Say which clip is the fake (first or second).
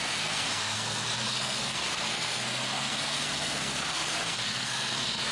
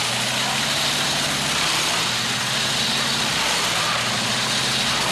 first